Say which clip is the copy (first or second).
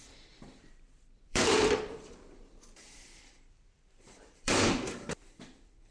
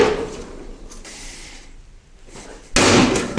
first